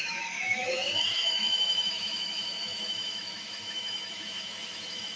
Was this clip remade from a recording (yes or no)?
yes